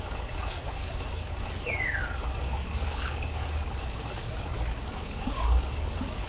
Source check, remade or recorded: remade